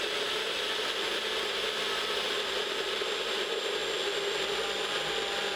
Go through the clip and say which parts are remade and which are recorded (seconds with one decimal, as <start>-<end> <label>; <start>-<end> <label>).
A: 0.0-5.6 recorded